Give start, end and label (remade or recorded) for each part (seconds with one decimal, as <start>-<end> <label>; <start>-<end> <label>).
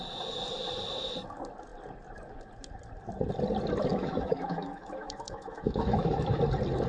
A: 0.0-3.9 recorded; 3.9-6.4 remade; 6.4-6.9 recorded